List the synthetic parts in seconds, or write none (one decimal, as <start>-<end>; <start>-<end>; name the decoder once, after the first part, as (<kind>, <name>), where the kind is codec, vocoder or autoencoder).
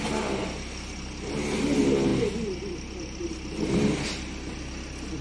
none